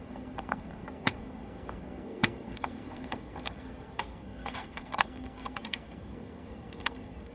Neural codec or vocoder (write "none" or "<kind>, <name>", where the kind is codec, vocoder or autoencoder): codec, SNAC